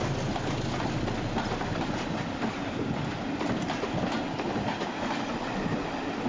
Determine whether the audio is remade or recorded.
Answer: recorded